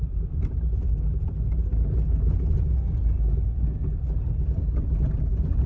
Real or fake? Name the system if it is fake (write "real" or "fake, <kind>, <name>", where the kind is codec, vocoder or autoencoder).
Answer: real